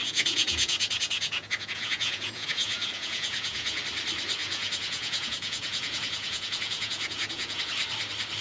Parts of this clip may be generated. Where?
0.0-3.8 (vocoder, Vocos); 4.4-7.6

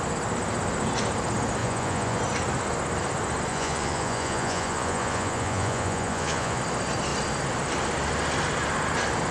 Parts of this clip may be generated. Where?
1.6-2.2 (vocoder, Vocos); 3.5-6.6

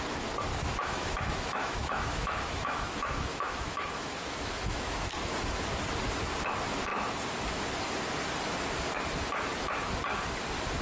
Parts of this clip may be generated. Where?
0.5-5.6 (autoencoder, DAC-VAE)

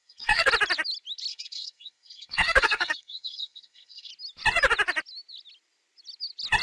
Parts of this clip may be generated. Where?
0.0-0.5 (codec, SNAC); 1.3-4.1

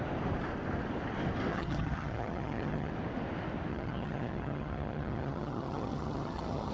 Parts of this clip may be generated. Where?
1.5-2.9 (vocoder, HiFi-GAN); 3.7-6.7

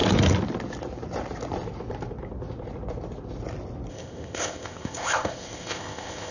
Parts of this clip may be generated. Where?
3.9-6.3 (codec, ZipCodec)

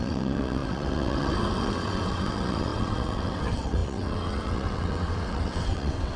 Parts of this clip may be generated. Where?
0.0-6.2 (vocoder, WaveNeXt)

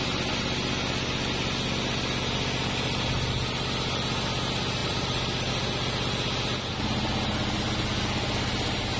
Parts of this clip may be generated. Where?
4.8-5.5 (vocoder, BigVGAN v2)